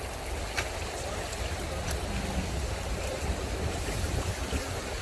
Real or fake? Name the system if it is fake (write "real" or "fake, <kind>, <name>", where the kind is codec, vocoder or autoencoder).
real